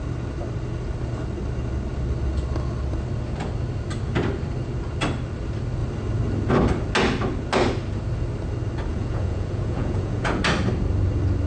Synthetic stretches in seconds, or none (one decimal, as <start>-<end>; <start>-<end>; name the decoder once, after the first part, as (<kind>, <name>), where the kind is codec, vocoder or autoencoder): 8.9-10.4 (vocoder, Vocos)